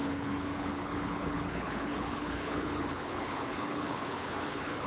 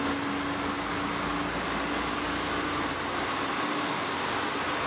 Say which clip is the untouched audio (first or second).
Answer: second